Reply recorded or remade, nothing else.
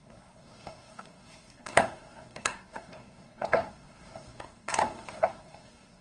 remade